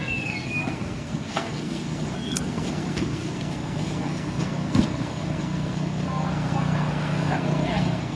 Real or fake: fake